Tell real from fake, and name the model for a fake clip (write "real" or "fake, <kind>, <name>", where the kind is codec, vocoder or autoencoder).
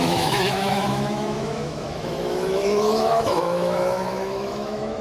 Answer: fake, autoencoder, DAC-VAE